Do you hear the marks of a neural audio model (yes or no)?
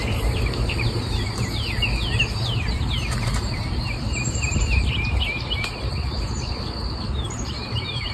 yes